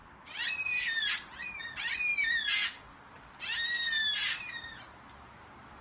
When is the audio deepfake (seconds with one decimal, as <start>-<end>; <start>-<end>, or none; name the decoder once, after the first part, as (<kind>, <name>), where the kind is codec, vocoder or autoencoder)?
none